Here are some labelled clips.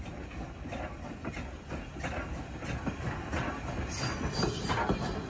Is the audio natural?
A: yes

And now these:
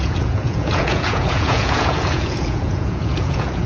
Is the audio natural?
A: no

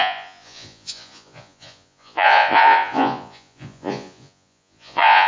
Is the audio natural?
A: no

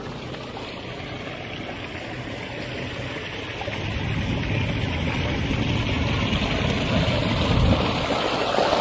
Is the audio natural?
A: yes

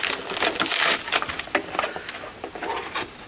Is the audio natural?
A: yes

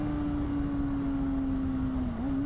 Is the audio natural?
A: yes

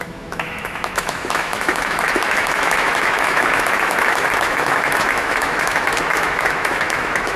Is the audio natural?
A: no